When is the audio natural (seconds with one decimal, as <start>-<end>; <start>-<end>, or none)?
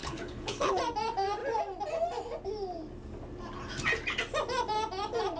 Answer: 0.8-5.4